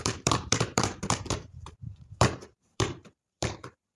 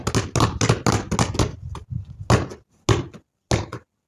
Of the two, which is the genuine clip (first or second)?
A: second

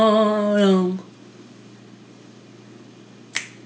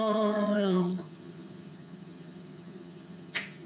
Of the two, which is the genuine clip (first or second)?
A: first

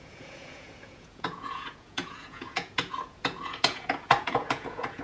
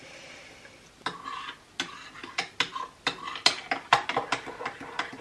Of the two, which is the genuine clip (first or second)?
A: second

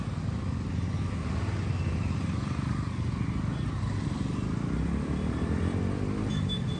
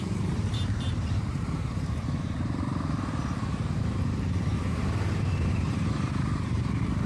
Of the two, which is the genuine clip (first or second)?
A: first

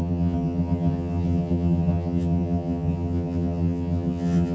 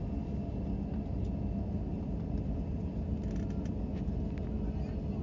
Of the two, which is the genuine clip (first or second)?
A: second